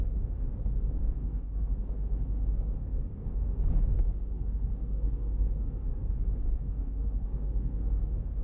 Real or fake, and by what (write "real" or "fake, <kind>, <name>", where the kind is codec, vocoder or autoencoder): fake, codec, SNAC